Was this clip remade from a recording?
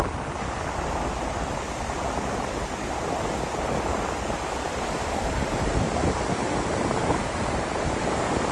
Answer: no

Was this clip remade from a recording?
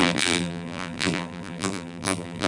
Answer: yes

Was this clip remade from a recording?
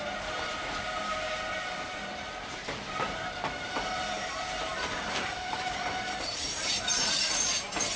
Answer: yes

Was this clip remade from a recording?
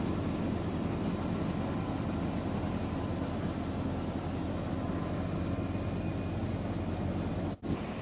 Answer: no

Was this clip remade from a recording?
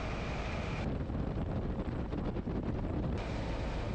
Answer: no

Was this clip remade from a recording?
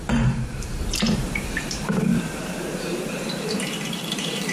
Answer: yes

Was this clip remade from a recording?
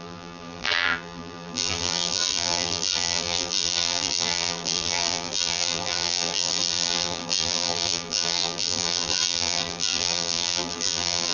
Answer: yes